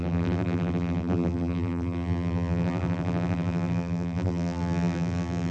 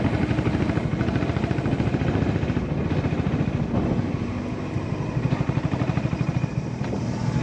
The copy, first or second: first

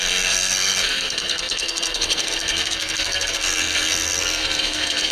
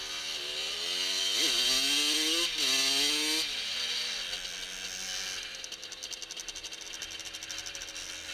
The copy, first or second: first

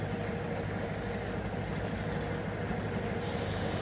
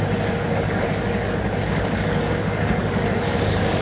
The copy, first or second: second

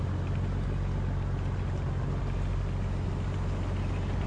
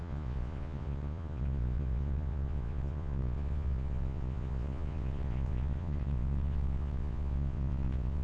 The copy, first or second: second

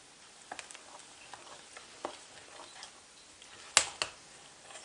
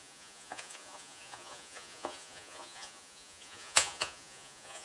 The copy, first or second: second